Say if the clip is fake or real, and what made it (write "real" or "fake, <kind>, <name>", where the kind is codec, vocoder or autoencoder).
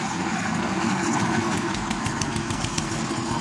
fake, codec, SNAC